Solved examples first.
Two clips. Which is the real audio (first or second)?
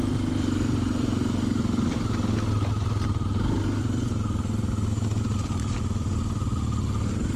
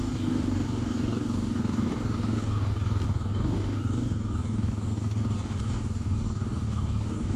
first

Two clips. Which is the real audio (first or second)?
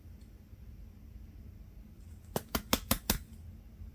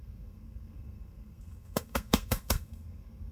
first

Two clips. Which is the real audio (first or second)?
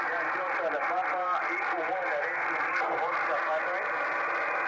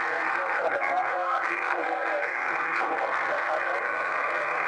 first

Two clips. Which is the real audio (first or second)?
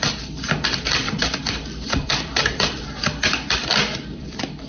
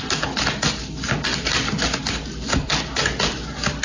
second